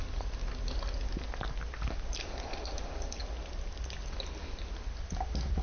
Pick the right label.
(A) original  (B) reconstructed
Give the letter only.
A